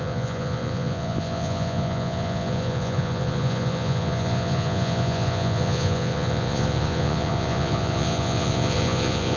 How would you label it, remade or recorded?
remade